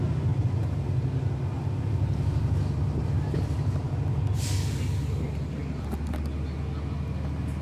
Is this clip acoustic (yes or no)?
yes